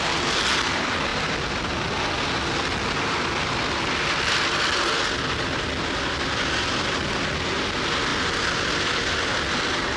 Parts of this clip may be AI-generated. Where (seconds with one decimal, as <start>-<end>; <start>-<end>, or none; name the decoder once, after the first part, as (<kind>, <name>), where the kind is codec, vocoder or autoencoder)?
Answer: none